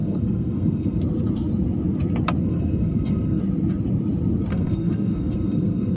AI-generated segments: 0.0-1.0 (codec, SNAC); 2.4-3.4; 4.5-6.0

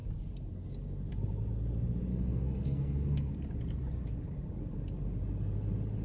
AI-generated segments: 2.1-3.3 (codec, SNAC)

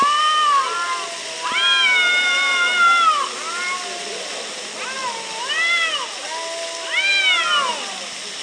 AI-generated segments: none